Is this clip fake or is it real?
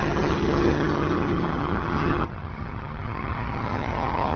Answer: fake